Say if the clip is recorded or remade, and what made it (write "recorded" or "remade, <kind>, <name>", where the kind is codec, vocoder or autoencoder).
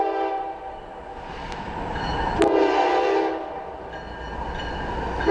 recorded